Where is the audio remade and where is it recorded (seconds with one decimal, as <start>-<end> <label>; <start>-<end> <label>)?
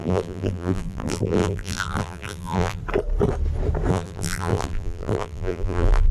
0.0-2.8 remade; 2.8-3.9 recorded; 3.9-6.1 remade